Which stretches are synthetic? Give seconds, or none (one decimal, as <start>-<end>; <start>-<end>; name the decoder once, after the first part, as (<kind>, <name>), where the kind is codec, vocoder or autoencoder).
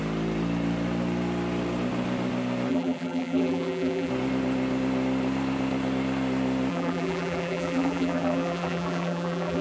2.7-4.1 (vocoder, BigVGAN v2); 6.7-9.6